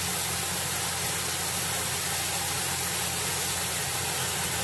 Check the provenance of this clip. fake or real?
real